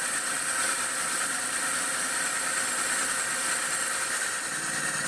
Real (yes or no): yes